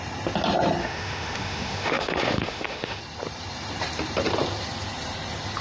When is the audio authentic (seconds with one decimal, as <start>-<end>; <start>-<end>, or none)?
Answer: 0.0-0.8; 3.0-5.6